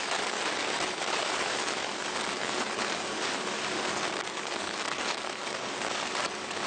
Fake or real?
fake